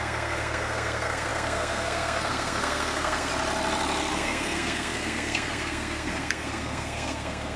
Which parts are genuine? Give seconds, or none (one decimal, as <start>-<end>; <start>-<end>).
3.3-4.1